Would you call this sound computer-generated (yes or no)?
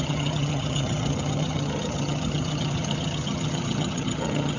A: yes